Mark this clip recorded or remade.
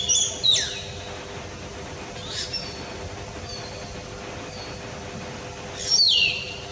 recorded